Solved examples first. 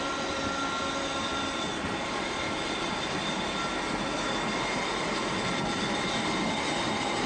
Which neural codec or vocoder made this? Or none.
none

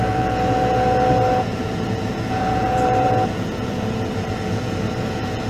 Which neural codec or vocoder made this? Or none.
vocoder, Vocos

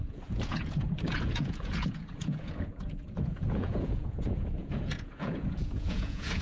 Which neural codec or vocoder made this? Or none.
vocoder, Vocos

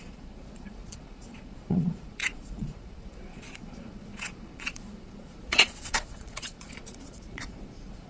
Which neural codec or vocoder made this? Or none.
vocoder, Vocos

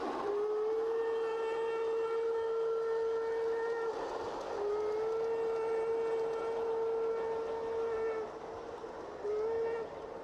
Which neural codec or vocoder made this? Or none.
none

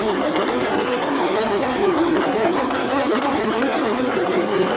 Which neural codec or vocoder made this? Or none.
codec, SNAC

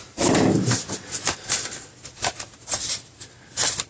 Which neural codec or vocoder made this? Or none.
none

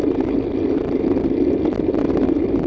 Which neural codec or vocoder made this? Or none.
none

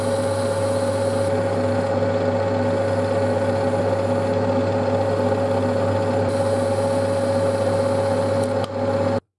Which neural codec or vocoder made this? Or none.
none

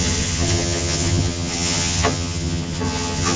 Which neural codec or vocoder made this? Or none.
vocoder, HiFi-GAN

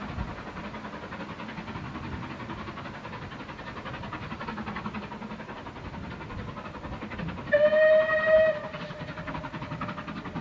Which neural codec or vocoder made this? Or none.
none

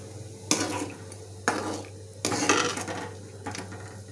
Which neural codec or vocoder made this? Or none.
none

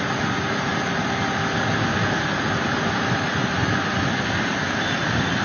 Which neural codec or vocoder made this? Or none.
none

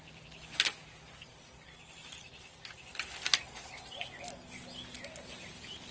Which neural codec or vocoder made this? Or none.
none